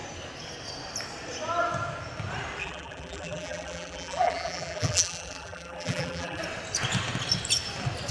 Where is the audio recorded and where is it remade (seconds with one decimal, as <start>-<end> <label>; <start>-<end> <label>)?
0.0-2.6 recorded; 2.6-6.4 remade; 6.4-8.1 recorded